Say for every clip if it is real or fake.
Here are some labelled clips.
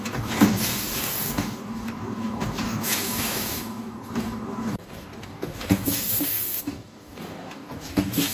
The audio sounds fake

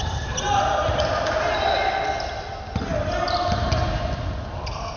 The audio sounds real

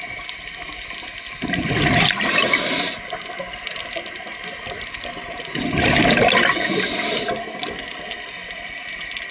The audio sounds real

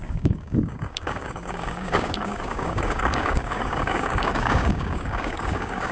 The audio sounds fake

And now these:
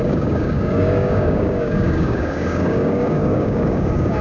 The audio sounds fake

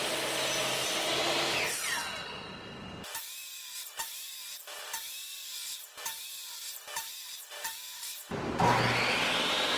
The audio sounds real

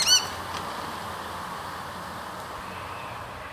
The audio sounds real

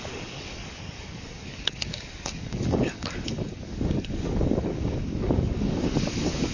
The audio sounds fake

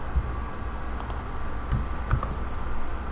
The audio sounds real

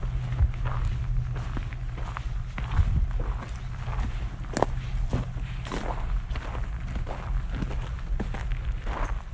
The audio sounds real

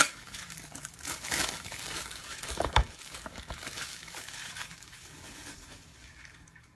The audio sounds fake